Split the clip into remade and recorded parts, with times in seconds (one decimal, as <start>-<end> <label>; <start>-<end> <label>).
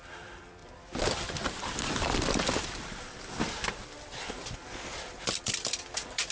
0.0-6.3 remade